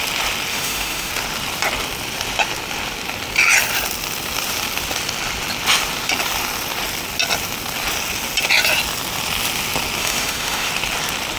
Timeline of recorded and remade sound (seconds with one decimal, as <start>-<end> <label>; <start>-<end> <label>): 0.0-0.5 recorded; 0.5-1.1 remade; 1.1-10.0 recorded; 10.0-10.7 remade; 10.7-11.4 recorded